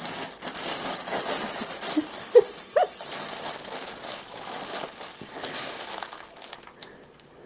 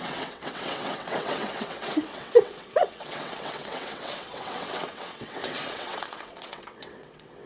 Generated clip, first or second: second